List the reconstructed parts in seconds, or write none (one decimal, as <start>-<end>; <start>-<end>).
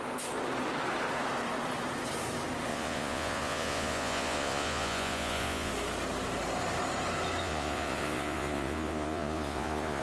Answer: 2.7-5.7; 7.4-10.0